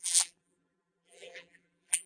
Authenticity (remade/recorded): remade